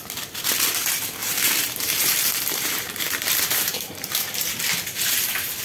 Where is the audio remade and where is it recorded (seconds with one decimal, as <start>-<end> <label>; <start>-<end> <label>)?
0.0-1.2 recorded; 1.2-4.6 remade; 4.6-5.6 recorded